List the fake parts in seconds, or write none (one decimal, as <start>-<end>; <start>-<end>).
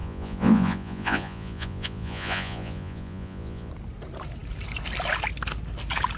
0.0-3.7